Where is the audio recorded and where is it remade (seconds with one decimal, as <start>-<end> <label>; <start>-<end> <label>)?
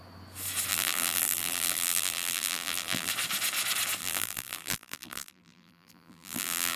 0.0-0.7 recorded; 0.7-3.1 remade; 3.1-4.0 recorded; 4.0-6.8 remade